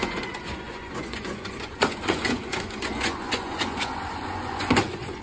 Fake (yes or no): yes